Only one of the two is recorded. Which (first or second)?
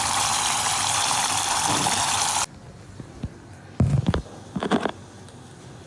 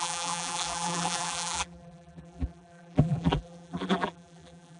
first